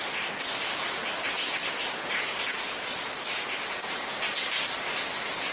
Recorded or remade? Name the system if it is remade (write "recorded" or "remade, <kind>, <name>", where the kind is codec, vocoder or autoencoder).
recorded